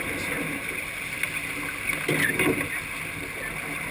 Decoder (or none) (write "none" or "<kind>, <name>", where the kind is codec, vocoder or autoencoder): none